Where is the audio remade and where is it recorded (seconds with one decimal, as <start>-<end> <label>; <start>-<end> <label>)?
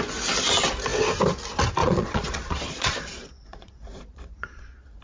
0.0-1.8 recorded; 1.8-5.0 remade